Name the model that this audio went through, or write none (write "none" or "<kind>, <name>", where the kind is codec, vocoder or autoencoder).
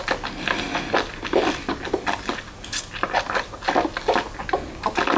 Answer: none